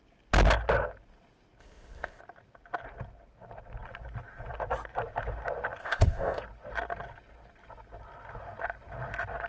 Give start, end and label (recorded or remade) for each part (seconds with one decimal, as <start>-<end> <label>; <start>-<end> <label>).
0.0-1.6 recorded; 1.6-2.2 remade; 2.2-5.8 recorded; 5.8-6.4 remade; 6.4-9.5 recorded